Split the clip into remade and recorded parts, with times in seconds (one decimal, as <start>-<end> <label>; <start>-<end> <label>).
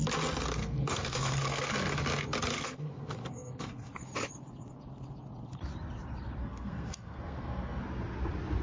0.0-0.6 recorded; 0.6-1.7 remade; 1.7-2.5 recorded; 2.5-4.0 remade; 4.0-6.4 recorded; 6.4-7.8 remade; 7.8-8.6 recorded